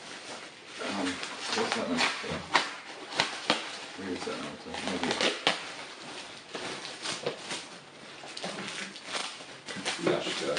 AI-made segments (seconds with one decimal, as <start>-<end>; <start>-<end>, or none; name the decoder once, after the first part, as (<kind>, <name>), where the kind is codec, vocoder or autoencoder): 0.6-4.4 (vocoder, BigVGAN v2); 9.2-9.7